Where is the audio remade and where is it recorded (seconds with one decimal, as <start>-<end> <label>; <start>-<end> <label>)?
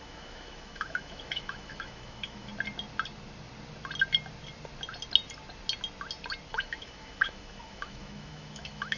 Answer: 0.0-2.5 remade; 2.5-6.5 recorded; 6.5-9.0 remade